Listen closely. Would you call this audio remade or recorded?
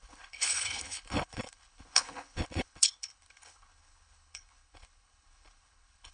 remade